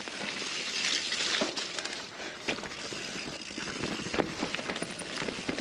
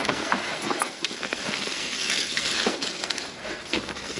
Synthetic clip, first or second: second